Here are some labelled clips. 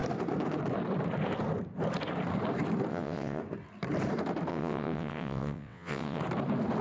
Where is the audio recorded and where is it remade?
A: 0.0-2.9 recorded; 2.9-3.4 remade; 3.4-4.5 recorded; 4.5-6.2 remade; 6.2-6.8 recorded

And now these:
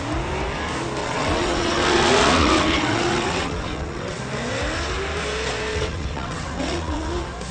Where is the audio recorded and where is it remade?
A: 0.0-1.0 recorded; 1.0-4.2 remade; 4.2-5.7 recorded; 5.7-7.1 remade; 7.1-7.5 recorded

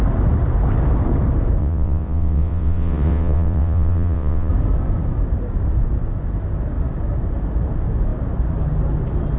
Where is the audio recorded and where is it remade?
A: 0.0-1.6 recorded; 1.6-4.5 remade; 4.5-9.4 recorded

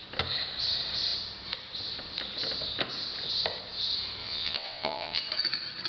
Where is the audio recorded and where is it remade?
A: 0.0-4.2 recorded; 4.2-5.2 remade; 5.2-5.9 recorded

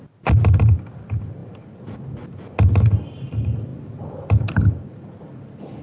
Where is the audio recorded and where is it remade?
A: 0.0-5.8 recorded

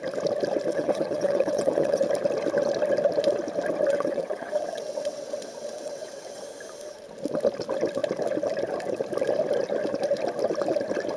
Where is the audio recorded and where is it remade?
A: 0.0-0.7 recorded; 0.7-2.0 remade; 2.0-3.9 recorded; 3.9-6.4 remade; 6.4-11.2 recorded